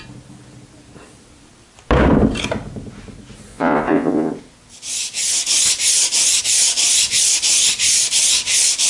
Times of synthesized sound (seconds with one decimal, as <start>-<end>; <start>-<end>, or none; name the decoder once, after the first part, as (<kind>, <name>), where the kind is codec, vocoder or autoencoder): 3.5-4.3 (vocoder, Vocos)

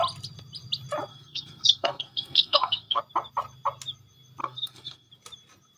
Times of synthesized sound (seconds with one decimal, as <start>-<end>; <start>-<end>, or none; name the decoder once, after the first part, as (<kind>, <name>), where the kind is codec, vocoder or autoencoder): 1.1-3.0 (codec, SNAC); 4.4-5.1